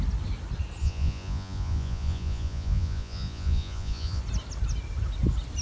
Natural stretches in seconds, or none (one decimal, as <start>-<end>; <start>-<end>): 0.0-0.8; 4.2-5.6